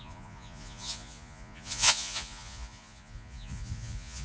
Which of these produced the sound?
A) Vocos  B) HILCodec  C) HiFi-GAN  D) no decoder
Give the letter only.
A